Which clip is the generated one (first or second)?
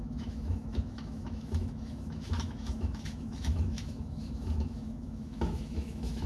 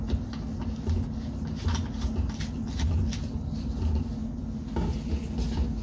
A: first